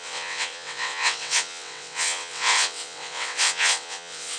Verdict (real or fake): fake